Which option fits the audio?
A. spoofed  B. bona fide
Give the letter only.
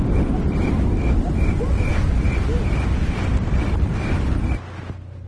B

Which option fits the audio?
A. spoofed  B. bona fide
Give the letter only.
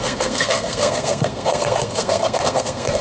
A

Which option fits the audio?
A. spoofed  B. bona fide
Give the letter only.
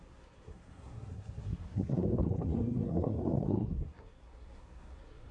A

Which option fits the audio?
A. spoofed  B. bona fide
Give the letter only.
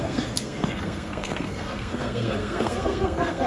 A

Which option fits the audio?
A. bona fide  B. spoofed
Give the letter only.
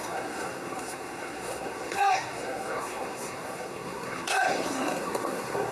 B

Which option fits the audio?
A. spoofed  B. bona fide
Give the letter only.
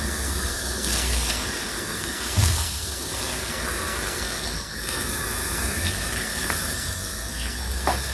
A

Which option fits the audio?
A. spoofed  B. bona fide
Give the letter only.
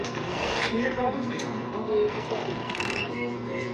A